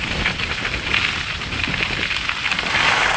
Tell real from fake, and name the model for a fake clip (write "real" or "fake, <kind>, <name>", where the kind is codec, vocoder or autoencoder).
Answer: real